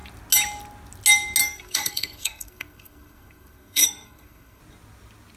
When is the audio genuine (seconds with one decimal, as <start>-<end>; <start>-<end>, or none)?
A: 0.0-1.4; 4.6-5.4